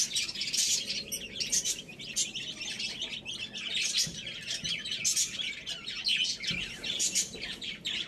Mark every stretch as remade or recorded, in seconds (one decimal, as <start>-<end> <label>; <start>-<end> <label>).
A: 0.0-1.9 remade; 1.9-6.5 recorded; 6.5-8.1 remade